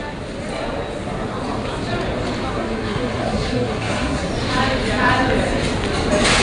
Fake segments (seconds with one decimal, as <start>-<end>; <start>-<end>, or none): 2.5-4.3